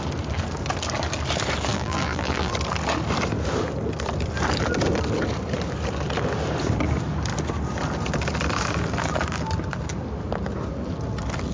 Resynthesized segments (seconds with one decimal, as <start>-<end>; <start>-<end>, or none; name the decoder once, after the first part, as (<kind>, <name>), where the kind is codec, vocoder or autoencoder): 1.7-2.5 (vocoder, BigVGAN v2)